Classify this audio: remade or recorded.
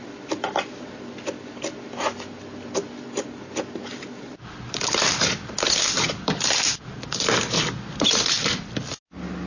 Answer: recorded